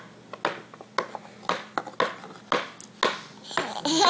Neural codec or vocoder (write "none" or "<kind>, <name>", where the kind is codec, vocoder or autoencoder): none